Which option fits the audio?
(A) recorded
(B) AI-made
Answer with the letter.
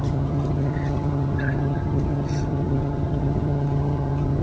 B